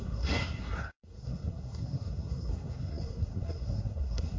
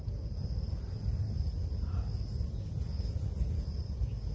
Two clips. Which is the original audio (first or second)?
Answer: second